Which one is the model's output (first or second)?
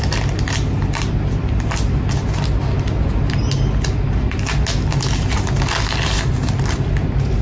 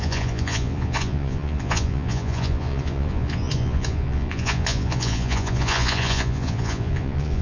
second